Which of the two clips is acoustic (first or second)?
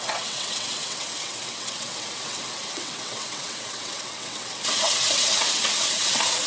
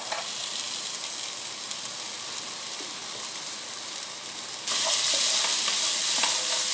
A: second